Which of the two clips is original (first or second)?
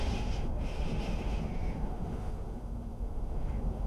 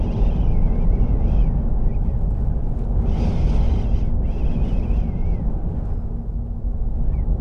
second